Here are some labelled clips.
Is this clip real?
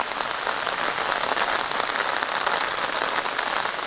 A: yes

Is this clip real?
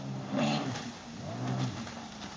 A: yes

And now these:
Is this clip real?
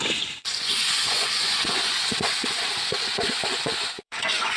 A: no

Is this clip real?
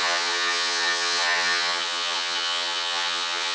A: no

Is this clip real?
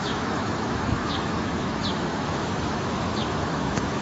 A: no